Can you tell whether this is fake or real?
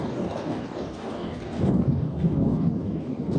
fake